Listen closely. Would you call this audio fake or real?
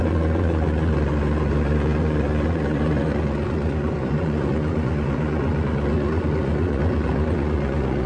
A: fake